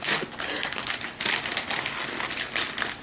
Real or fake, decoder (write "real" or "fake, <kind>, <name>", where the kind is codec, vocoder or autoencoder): real